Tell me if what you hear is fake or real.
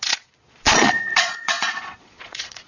fake